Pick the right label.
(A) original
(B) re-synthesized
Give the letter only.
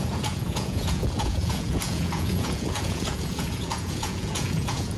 B